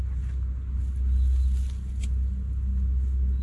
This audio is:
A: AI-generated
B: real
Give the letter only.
B